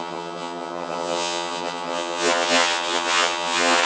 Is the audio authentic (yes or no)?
no